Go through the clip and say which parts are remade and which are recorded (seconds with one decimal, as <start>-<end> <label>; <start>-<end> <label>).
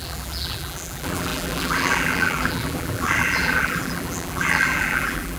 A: 0.0-5.4 remade